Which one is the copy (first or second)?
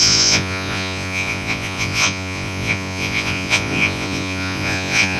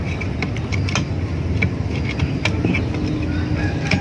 first